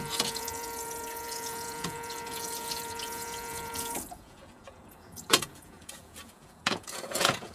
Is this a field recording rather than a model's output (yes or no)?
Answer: no